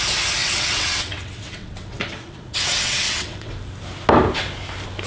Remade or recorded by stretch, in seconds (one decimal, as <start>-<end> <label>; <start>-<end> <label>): 0.0-0.4 recorded; 0.4-3.5 remade; 3.5-5.1 recorded